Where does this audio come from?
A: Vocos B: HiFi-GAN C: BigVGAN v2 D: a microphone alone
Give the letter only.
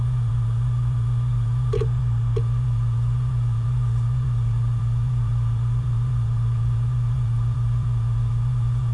C